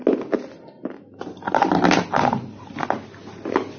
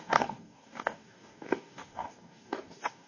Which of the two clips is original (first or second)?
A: first